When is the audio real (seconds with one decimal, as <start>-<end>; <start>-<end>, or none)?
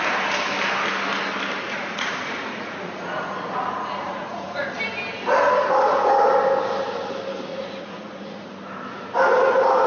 0.0-1.6; 4.8-7.5; 8.5-9.9